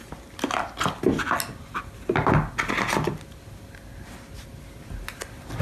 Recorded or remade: recorded